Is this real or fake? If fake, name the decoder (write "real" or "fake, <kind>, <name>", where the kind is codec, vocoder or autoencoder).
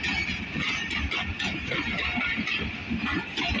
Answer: real